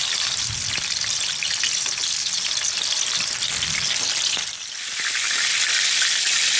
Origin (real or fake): real